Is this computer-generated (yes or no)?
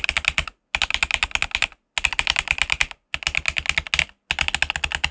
no